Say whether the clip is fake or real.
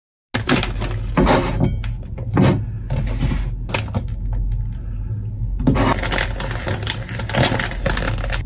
real